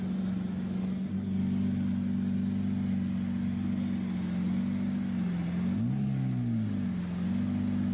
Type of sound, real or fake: real